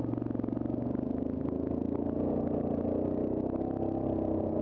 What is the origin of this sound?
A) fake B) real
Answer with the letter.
B